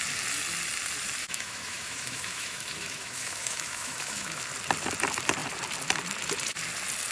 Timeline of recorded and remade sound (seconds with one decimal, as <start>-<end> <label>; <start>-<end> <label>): 0.0-1.2 recorded; 1.2-4.4 remade; 4.4-7.1 recorded